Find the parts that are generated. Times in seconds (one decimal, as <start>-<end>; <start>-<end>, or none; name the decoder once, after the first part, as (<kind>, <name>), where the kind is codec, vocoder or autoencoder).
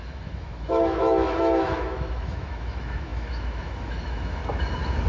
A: 0.0-4.4 (autoencoder, DAC-VAE)